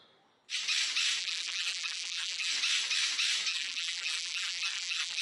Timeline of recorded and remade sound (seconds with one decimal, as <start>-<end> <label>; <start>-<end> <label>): 0.0-1.2 recorded; 1.2-2.5 remade; 2.5-3.5 recorded; 3.5-5.2 remade